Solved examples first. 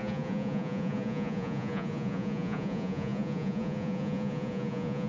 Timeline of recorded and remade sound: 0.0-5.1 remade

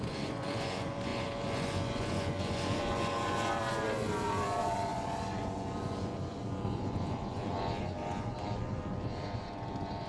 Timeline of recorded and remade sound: 0.0-10.1 remade